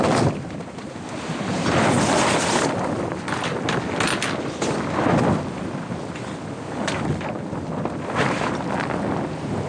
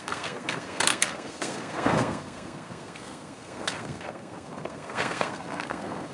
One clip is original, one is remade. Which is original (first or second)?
first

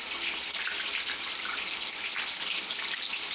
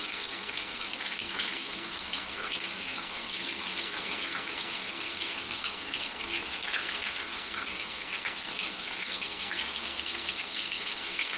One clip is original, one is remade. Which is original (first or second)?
first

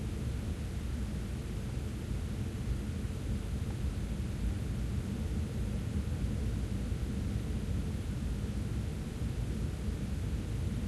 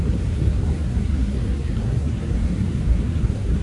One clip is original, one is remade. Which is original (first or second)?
first